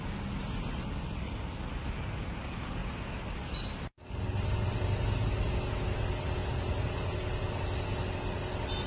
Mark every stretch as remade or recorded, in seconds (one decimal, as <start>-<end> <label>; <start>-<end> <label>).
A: 0.0-8.9 recorded